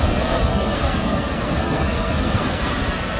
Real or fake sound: fake